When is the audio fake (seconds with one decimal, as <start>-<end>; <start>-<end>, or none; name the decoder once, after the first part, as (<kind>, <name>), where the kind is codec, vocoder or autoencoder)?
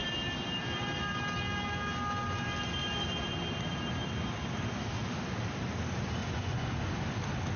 6.2-6.8 (vocoder, Vocos)